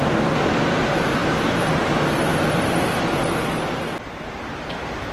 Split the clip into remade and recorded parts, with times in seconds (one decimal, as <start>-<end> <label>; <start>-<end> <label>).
0.0-5.1 recorded